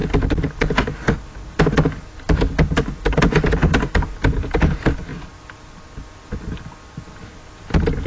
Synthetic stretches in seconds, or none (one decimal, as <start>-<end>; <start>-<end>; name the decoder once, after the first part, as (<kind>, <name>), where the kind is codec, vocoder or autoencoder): 5.1-5.9 (vocoder, BigVGAN v2)